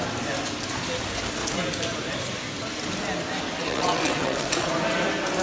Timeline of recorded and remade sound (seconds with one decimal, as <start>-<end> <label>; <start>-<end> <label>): 0.0-3.6 recorded; 3.6-4.7 remade; 4.7-5.4 recorded